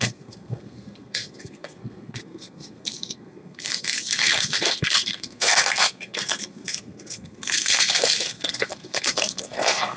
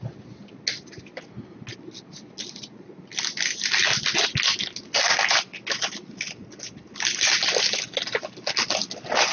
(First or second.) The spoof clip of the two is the first